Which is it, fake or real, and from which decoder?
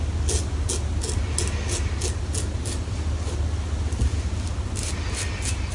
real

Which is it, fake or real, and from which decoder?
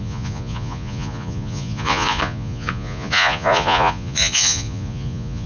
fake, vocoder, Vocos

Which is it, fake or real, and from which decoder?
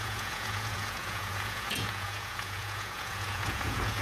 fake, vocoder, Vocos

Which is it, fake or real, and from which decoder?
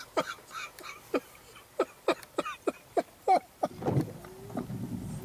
real